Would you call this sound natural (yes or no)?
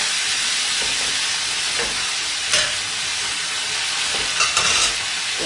yes